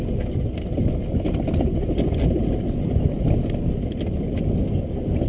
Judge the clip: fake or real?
real